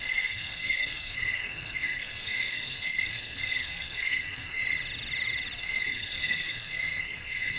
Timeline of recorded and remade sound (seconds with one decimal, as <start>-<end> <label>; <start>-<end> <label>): 0.0-4.6 remade; 4.6-5.6 recorded; 5.6-7.6 remade